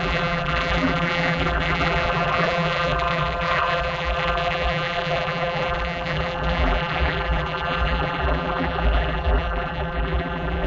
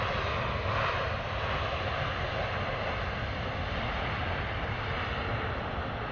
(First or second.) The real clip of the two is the second